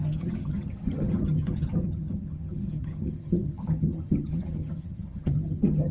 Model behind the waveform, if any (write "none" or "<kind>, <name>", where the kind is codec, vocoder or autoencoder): vocoder, HiFi-GAN